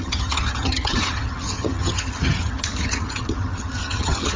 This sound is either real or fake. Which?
fake